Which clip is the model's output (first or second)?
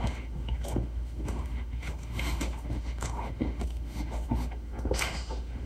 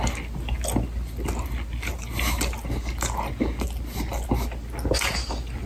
first